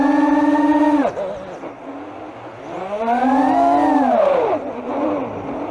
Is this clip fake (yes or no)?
no